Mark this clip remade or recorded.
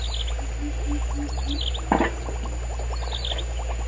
recorded